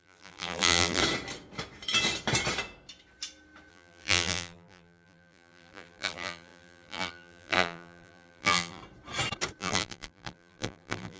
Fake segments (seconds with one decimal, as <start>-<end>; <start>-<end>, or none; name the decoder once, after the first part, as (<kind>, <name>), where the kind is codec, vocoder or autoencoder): 0.0-1.0 (vocoder, BigVGAN v2); 3.7-8.8; 9.6-11.2